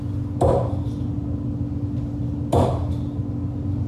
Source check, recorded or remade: recorded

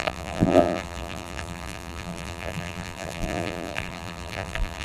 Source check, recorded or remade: remade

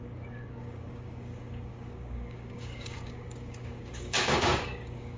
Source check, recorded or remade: remade